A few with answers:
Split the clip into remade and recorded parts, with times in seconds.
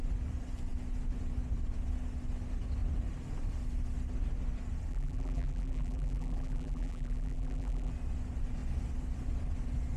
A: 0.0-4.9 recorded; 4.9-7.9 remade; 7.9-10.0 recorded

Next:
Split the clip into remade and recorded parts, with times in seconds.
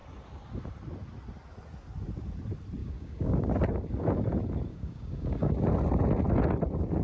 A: 0.0-2.8 recorded; 2.8-3.5 remade; 3.5-4.7 recorded; 4.7-5.6 remade; 5.6-7.0 recorded